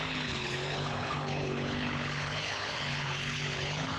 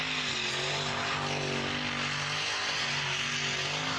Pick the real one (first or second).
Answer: second